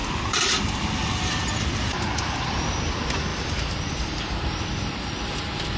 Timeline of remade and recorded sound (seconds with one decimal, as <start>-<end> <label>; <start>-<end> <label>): 0.0-0.7 remade; 0.7-5.8 recorded